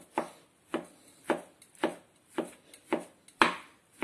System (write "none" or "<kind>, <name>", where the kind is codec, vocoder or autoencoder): none